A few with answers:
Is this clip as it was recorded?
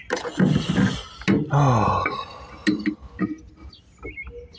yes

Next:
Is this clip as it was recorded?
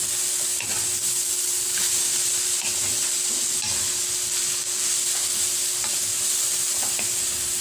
yes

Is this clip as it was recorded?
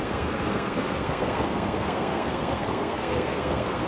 no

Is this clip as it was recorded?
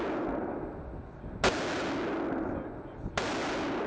yes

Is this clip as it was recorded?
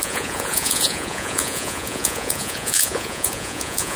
no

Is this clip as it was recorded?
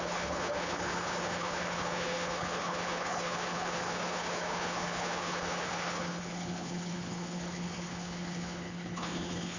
no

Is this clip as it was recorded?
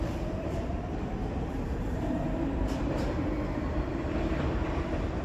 no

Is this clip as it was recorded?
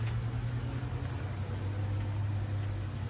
yes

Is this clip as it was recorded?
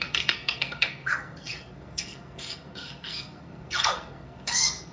no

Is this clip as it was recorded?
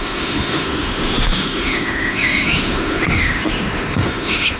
no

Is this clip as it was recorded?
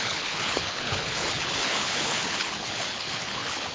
no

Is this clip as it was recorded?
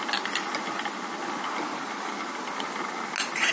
yes